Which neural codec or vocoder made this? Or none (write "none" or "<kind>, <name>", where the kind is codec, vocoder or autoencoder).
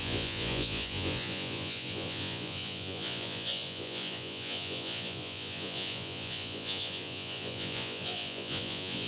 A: vocoder, Vocos